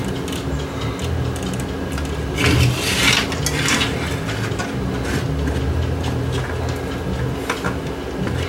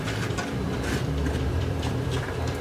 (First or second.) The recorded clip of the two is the first